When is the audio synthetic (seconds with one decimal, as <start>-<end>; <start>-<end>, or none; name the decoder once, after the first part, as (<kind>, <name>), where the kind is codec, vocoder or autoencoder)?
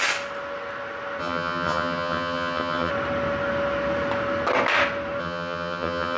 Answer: 1.2-2.9 (vocoder, HiFi-GAN); 5.2-6.2